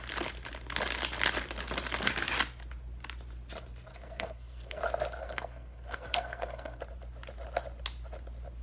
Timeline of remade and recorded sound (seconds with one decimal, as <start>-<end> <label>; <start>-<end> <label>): 0.0-3.9 recorded; 3.9-4.8 remade; 4.8-5.2 recorded; 5.2-6.8 remade; 6.8-8.6 recorded